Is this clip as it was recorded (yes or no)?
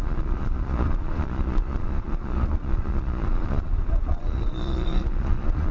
no